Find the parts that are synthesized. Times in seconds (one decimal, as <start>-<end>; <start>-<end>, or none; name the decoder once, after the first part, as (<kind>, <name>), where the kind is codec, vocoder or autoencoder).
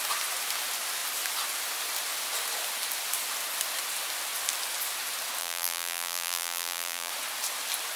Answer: 5.4-7.1 (vocoder, BigVGAN v2)